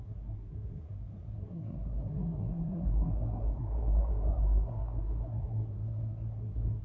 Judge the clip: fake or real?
fake